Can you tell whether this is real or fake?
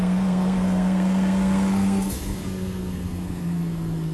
fake